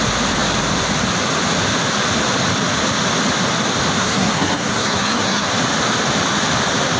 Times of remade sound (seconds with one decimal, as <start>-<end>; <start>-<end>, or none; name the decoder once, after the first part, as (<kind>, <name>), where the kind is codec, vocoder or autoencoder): 4.0-5.5 (codec, SNAC)